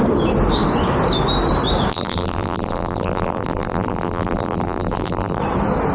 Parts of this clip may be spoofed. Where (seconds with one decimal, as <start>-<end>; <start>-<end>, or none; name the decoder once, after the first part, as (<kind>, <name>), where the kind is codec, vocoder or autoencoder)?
1.9-5.4 (vocoder, BigVGAN v2)